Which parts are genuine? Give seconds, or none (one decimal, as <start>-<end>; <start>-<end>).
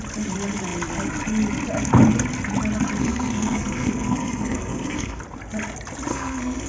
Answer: 0.0-3.0; 5.2-6.1